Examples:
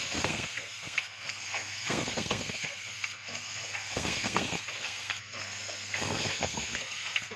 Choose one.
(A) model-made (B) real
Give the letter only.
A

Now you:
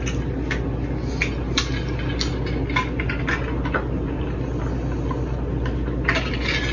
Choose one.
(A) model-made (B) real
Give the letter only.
B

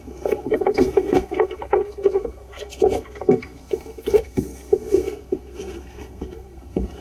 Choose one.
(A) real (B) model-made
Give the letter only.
B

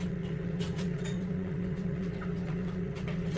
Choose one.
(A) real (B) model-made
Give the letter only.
B